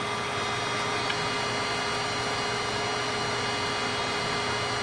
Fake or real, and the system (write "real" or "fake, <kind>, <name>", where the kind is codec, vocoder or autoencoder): real